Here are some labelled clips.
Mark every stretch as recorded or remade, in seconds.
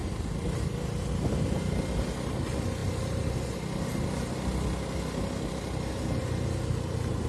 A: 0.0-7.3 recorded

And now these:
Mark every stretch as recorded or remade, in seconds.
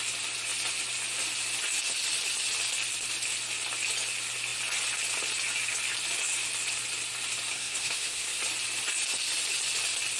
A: 0.0-7.5 recorded; 7.5-8.4 remade; 8.4-10.2 recorded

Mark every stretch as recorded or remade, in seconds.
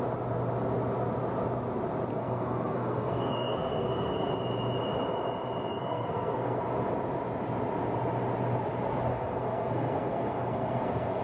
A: 0.0-2.1 recorded; 2.1-4.3 remade; 4.3-5.7 recorded; 5.7-6.6 remade; 6.6-9.1 recorded; 9.1-11.2 remade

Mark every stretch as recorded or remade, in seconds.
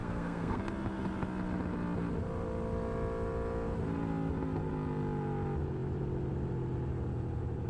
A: 0.0-0.6 remade; 0.6-7.7 recorded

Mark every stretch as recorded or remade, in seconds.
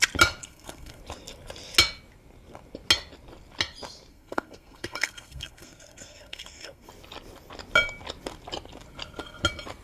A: 0.0-0.4 recorded; 0.4-1.0 remade; 1.0-4.1 recorded; 4.1-6.9 remade; 6.9-9.8 recorded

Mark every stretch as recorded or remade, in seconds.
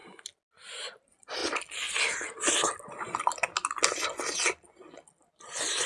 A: 0.0-5.9 recorded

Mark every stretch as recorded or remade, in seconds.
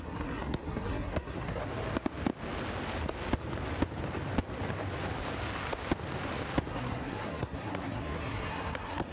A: 0.0-1.6 remade; 1.6-6.7 recorded; 6.7-9.1 remade